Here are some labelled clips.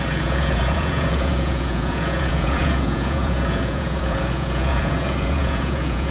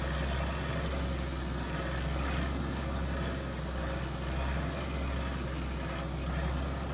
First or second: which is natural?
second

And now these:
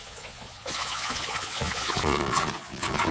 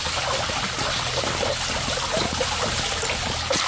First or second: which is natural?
second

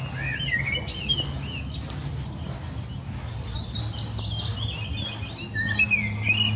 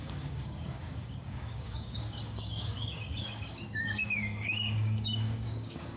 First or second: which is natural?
first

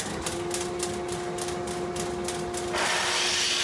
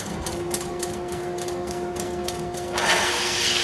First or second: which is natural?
first